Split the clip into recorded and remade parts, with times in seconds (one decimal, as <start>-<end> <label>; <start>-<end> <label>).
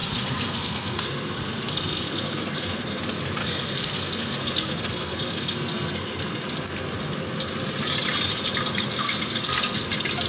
0.0-3.0 remade; 3.0-3.4 recorded; 3.4-6.4 remade; 6.4-9.0 recorded; 9.0-9.8 remade; 9.8-10.3 recorded